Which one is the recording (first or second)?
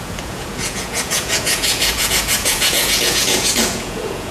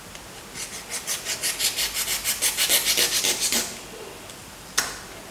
second